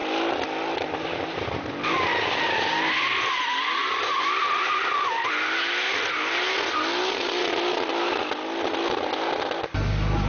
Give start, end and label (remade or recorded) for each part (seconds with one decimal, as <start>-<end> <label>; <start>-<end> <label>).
0.0-10.3 recorded

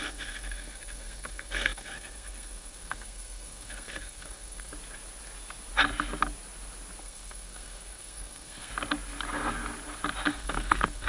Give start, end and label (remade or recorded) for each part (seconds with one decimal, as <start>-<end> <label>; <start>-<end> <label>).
0.0-4.7 remade; 4.7-7.0 recorded; 7.0-8.7 remade; 8.7-10.3 recorded; 10.3-11.1 remade

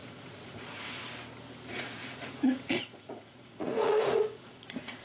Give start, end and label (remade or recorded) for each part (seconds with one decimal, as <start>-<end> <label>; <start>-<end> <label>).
0.0-1.0 remade; 1.0-1.7 recorded; 1.7-5.0 remade

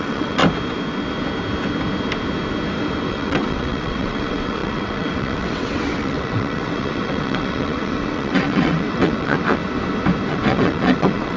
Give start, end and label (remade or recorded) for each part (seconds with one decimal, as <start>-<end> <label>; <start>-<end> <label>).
0.0-0.4 remade; 0.4-3.1 recorded; 3.1-9.6 remade; 9.6-10.3 recorded; 10.3-11.4 remade